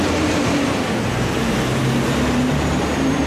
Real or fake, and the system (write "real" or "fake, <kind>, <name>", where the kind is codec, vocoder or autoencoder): fake, vocoder, BigVGAN v2